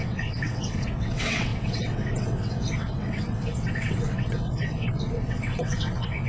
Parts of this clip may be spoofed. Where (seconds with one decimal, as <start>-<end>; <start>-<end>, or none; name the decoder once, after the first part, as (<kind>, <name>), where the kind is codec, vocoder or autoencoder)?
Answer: 0.0-6.3 (vocoder, WaveNeXt)